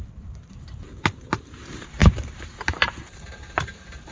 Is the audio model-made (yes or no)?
yes